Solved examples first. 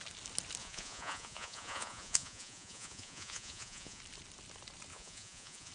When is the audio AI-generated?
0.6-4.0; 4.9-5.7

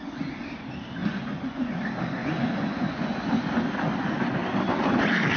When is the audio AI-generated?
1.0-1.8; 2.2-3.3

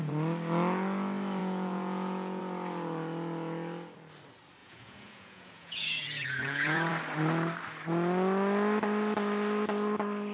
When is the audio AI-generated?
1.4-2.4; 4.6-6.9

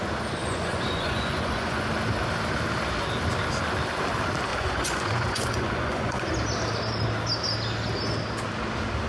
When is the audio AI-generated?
0.4-1.9; 4.5-6.3